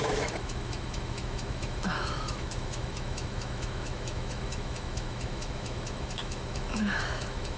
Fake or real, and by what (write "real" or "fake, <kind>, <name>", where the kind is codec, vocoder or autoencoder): fake, autoencoder, DAC-VAE